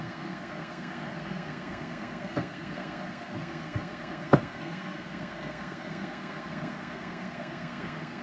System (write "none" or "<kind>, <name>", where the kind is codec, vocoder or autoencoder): codec, SNAC